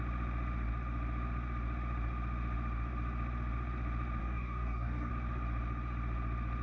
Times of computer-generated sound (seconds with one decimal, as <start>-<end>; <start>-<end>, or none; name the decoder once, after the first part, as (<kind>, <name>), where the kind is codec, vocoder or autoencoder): 4.2-5.1 (codec, DAC)